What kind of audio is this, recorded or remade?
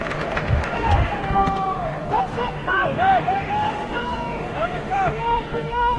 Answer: remade